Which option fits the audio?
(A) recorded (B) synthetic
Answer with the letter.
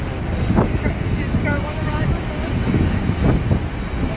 A